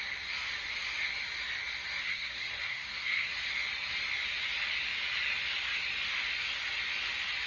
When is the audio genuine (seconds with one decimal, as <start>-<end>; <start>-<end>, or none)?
0.0-2.0; 3.3-7.5